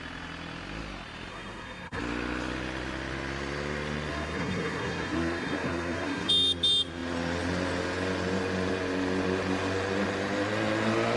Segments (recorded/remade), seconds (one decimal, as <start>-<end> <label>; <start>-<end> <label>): 0.0-1.3 recorded; 1.3-2.0 remade; 2.0-4.1 recorded; 4.1-6.3 remade; 6.3-11.2 recorded